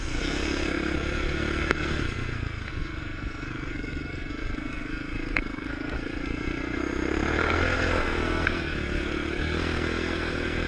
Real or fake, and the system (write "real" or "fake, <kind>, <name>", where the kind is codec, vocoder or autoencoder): fake, codec, SNAC